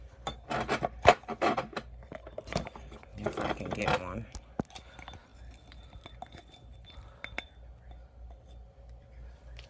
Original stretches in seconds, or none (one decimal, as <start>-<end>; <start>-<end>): 0.0-9.7